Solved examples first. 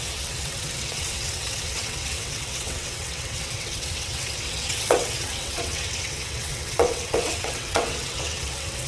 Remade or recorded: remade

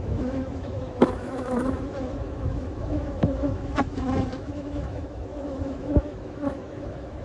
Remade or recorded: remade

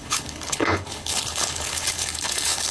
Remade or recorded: remade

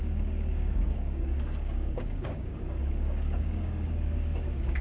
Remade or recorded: remade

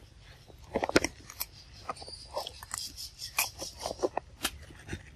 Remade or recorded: recorded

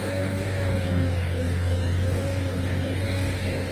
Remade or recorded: remade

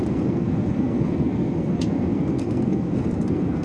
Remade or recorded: remade